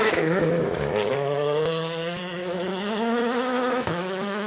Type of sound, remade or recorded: remade